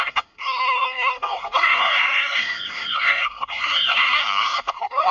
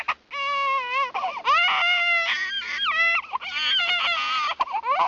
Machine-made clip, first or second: first